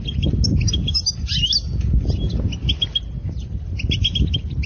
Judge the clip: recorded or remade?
recorded